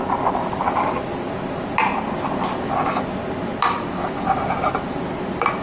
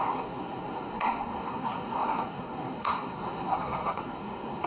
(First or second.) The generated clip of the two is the second